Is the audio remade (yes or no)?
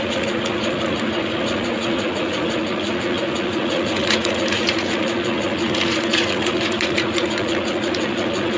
yes